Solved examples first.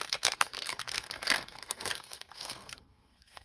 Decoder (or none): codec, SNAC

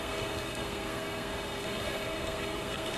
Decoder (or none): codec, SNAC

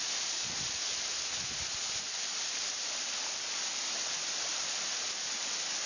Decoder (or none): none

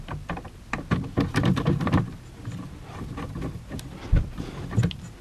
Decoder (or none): none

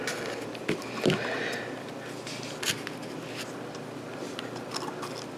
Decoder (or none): none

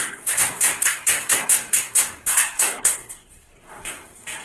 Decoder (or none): codec, SNAC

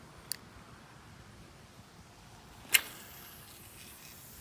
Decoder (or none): none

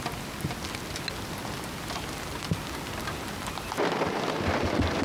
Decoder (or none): none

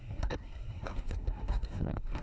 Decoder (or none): codec, SNAC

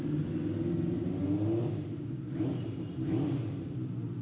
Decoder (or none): none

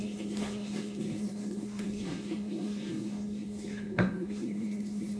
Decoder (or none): codec, SNAC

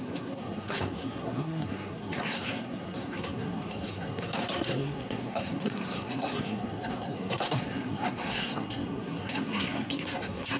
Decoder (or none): codec, SNAC